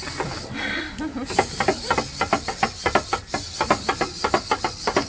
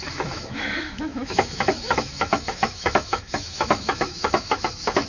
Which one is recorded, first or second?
first